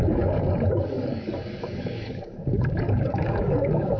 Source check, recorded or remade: remade